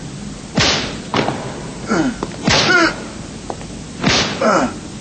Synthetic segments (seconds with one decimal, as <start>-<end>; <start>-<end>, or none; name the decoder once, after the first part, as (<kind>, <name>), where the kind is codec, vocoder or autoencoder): none